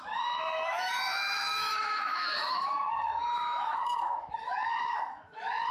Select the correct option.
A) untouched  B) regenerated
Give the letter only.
B